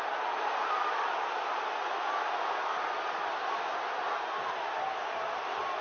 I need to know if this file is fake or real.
real